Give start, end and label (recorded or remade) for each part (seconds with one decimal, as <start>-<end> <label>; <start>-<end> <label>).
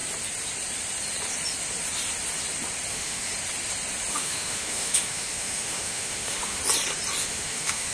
0.0-2.9 recorded; 2.9-3.3 remade; 3.3-4.1 recorded; 4.1-6.6 remade; 6.6-7.2 recorded; 7.2-7.9 remade